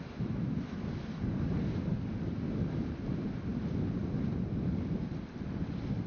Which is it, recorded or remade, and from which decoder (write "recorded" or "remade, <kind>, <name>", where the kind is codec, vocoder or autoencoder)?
recorded